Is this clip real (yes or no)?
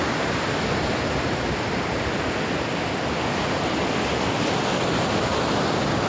yes